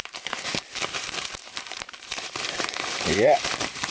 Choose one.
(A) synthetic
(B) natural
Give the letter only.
A